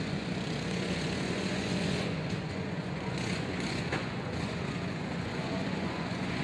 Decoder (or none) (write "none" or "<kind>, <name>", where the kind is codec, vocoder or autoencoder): vocoder, Vocos